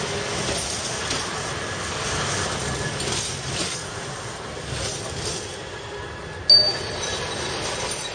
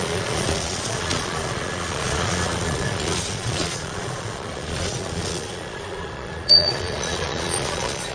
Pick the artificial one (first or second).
second